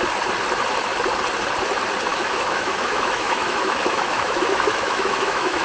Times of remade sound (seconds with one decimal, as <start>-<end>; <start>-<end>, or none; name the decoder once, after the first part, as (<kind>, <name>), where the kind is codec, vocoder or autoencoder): 2.1-5.6 (autoencoder, DAC-VAE)